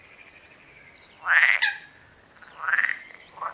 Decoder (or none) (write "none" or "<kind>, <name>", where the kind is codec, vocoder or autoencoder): vocoder, BigVGAN v2